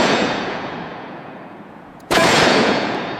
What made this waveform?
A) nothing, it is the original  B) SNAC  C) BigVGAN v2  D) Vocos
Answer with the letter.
D